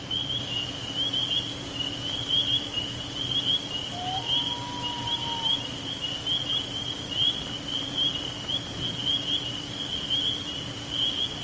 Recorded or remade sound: recorded